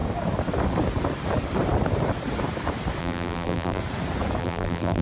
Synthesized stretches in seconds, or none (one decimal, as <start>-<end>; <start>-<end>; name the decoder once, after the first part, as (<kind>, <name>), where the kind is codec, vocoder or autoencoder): 3.0-3.8 (vocoder, BigVGAN v2); 4.4-5.0